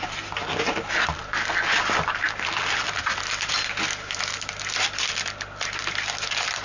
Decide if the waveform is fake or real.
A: real